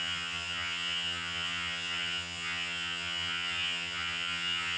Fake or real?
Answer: fake